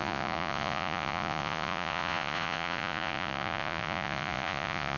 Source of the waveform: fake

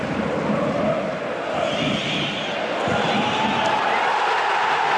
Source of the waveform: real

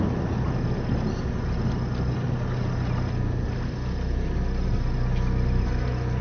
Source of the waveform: real